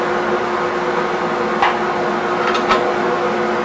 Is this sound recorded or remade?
recorded